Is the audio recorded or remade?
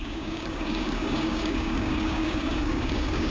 remade